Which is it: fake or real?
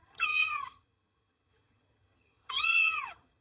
fake